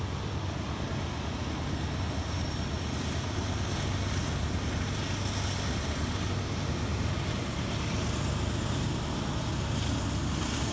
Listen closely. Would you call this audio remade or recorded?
recorded